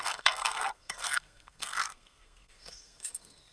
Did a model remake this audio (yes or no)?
yes